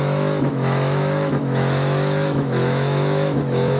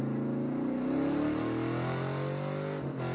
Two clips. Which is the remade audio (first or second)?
first